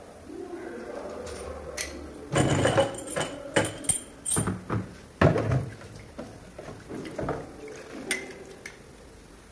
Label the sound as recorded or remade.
recorded